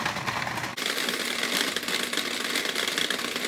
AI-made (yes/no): no